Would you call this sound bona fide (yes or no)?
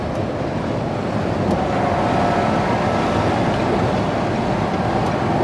yes